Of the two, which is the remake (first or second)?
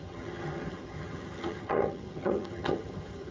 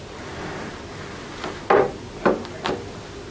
first